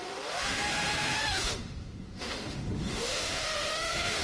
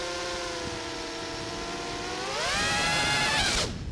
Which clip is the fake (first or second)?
first